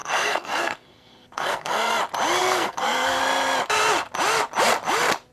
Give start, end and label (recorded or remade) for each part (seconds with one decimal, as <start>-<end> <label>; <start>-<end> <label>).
0.0-1.9 remade; 1.9-2.4 recorded; 2.4-3.2 remade; 3.2-5.3 recorded